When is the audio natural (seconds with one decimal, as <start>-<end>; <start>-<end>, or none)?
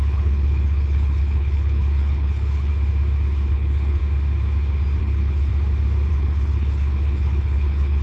2.7-3.5; 4.0-5.0; 5.5-6.1